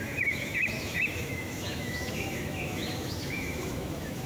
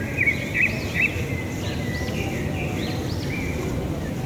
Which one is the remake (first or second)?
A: first